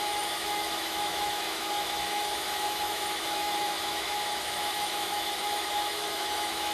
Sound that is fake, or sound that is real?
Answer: fake